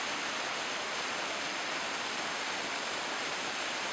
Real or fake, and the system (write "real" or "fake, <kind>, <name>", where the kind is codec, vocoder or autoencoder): real